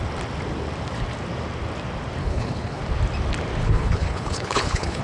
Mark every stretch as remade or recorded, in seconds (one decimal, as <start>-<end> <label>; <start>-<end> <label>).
0.0-2.2 recorded; 2.2-2.8 remade; 2.8-3.6 recorded; 3.6-5.0 remade